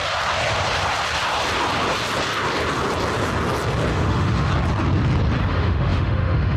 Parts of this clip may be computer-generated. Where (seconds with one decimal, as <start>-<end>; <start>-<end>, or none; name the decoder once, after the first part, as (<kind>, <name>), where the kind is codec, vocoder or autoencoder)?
3.9-4.5 (autoencoder, DAC-VAE); 5.5-6.6